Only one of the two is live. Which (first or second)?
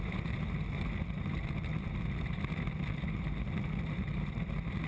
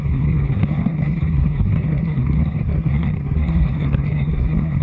first